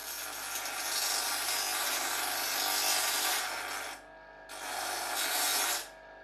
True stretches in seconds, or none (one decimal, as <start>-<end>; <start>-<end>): 0.0-6.2